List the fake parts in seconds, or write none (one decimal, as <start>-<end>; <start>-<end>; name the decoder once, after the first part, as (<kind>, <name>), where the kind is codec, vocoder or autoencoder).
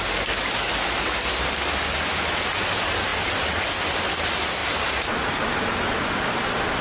4.6-5.6 (vocoder, BigVGAN v2)